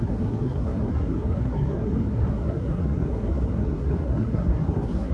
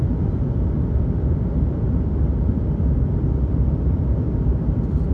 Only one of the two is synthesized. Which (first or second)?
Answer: first